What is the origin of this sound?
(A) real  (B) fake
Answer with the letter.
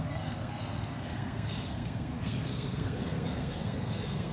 B